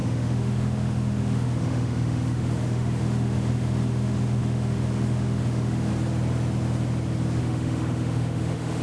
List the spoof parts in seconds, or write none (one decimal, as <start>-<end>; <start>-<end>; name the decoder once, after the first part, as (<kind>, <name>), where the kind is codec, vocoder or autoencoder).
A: 0.0-5.9 (autoencoder, DAC-VAE); 7.4-8.8